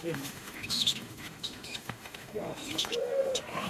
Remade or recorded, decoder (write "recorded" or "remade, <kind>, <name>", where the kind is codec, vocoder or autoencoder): remade, autoencoder, DAC-VAE